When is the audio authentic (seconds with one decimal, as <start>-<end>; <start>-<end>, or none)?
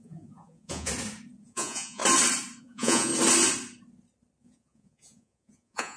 0.9-1.4; 2.0-2.6; 3.1-4.4